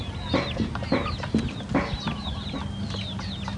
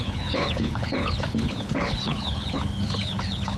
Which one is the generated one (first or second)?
second